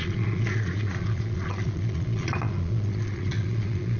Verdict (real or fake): fake